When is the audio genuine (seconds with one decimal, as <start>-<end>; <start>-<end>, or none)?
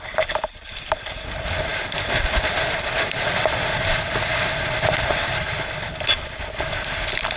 0.0-1.7; 6.1-7.4